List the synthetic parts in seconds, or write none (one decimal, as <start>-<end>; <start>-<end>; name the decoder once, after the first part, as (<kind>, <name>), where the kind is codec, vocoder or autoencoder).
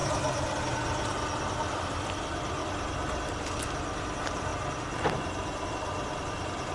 0.0-2.6 (vocoder, BigVGAN v2); 4.0-4.5; 5.7-6.7